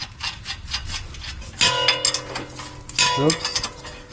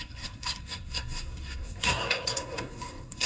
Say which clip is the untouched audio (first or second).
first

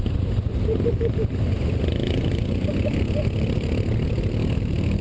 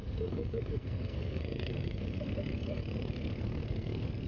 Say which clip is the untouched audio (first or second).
first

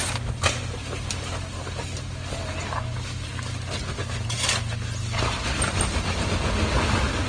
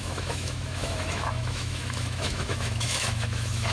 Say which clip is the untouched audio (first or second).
first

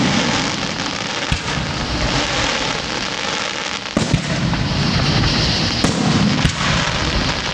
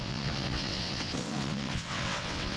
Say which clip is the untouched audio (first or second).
first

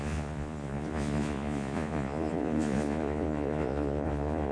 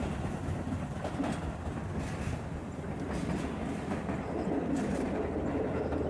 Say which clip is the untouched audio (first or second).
second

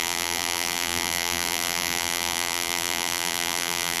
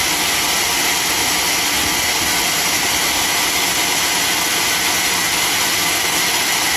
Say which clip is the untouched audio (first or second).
second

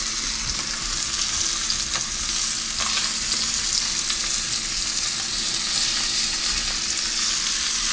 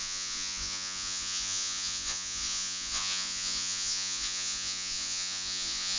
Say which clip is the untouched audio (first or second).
first